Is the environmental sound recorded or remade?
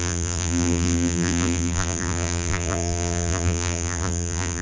remade